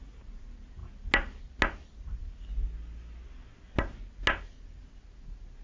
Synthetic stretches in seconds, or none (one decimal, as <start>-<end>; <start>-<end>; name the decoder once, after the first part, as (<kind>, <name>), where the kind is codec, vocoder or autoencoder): none